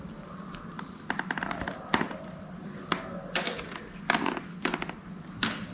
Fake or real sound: real